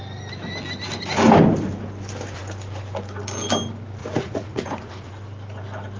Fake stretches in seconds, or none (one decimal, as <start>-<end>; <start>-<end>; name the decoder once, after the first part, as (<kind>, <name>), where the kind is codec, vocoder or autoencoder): 4.0-5.1 (vocoder, Vocos)